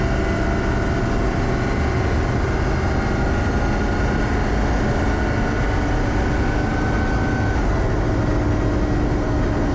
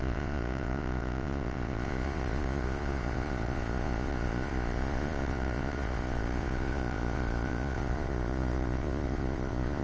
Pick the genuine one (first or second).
first